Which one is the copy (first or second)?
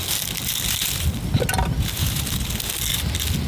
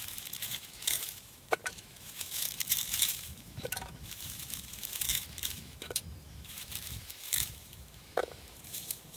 second